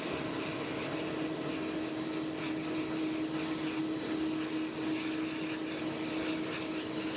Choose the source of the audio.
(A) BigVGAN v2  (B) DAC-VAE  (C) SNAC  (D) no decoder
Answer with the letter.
D